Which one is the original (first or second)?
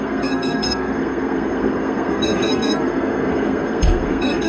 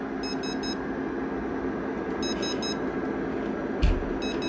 second